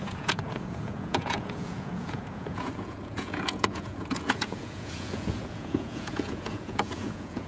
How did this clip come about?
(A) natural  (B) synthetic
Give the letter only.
B